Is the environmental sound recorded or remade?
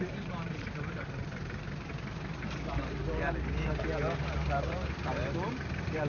remade